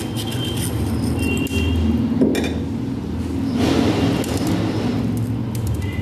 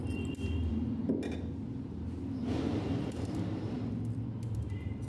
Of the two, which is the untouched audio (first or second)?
first